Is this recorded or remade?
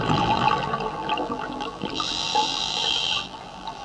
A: remade